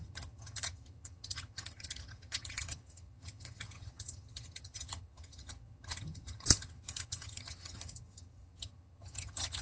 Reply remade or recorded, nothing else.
remade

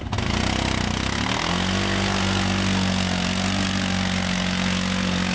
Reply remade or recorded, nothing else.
recorded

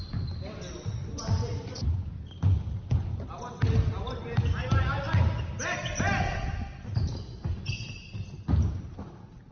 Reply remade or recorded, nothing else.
recorded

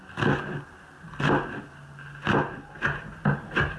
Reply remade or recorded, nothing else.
recorded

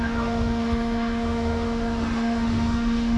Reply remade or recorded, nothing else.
remade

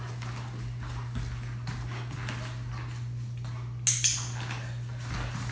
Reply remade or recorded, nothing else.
recorded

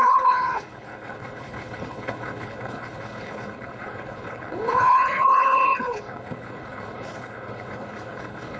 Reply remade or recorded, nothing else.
remade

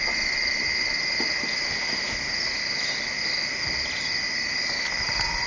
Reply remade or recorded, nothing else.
recorded